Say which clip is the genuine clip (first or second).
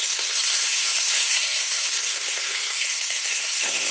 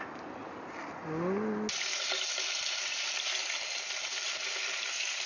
second